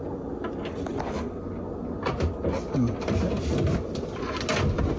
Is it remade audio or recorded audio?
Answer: recorded